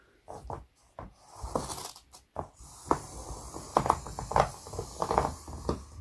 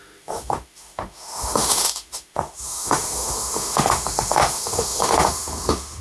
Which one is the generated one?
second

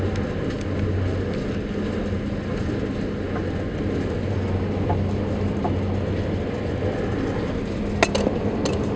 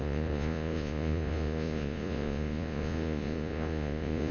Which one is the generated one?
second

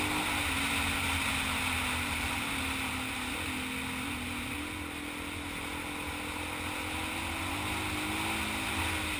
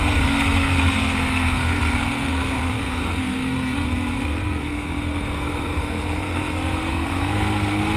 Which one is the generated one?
second